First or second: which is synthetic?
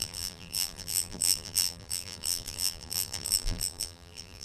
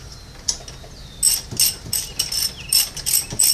first